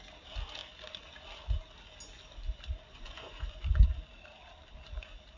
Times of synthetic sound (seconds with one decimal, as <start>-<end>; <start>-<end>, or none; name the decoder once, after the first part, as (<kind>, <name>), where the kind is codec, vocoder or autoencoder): 2.9-3.7 (vocoder, Vocos)